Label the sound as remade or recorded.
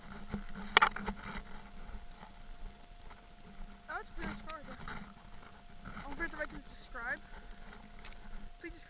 recorded